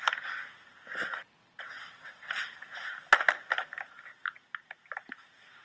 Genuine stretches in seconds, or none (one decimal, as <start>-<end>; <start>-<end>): 0.0-1.4; 2.4-5.6

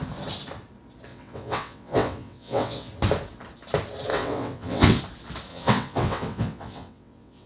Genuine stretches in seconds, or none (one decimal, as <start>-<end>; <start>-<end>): 0.0-1.1; 2.9-4.1; 5.0-5.5

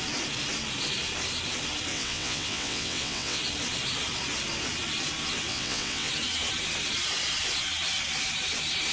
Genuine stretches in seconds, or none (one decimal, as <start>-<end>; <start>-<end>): 0.0-1.9; 3.4-5.5; 6.1-8.9